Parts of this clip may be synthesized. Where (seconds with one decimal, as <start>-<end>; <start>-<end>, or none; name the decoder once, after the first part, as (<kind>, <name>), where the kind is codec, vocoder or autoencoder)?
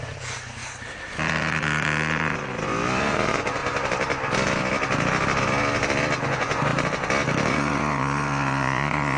0.0-0.6 (vocoder, Vocos); 3.0-3.6; 6.2-6.7; 7.5-9.2